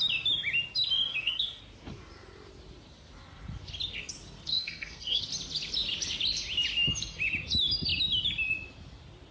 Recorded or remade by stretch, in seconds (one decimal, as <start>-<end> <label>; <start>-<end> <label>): 0.0-1.1 recorded; 1.1-1.6 remade; 1.6-4.5 recorded; 4.5-5.2 remade; 5.2-9.3 recorded